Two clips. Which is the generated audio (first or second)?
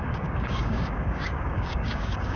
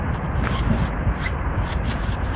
first